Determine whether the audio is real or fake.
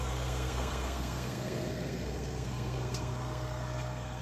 fake